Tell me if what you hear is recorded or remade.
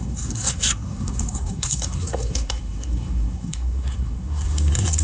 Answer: remade